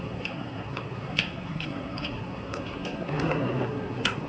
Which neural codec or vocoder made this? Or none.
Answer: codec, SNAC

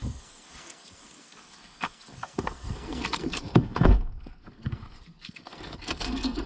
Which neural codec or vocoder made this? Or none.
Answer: codec, SNAC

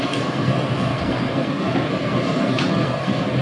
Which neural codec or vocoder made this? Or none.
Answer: codec, SNAC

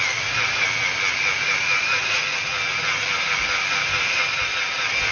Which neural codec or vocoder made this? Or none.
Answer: none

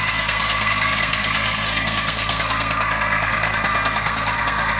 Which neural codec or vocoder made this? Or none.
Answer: codec, SNAC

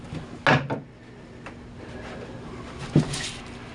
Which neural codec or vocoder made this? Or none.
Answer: none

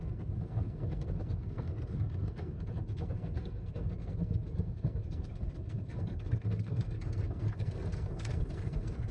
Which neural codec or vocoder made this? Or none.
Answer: codec, SNAC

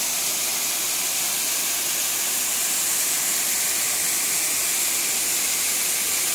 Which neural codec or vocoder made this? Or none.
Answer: none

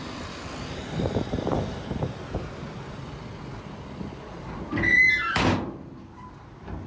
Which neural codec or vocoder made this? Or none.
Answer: none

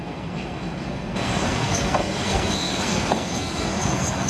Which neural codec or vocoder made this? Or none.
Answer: codec, SNAC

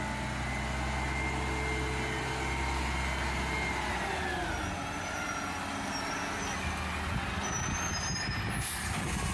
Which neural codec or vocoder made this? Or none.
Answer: none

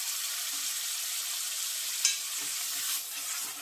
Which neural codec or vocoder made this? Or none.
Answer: none